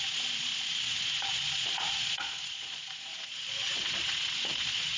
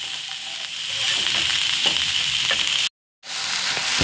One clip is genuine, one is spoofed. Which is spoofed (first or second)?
first